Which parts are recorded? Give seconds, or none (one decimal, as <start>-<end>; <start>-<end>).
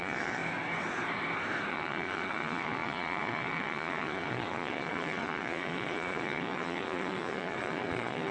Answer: 0.4-1.7